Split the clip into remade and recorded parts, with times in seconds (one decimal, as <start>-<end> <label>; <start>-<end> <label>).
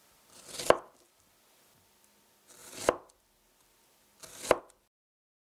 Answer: 0.0-5.4 recorded